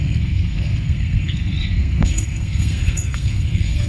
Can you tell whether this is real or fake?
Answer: fake